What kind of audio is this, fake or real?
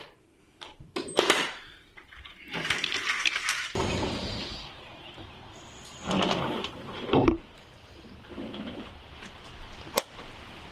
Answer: fake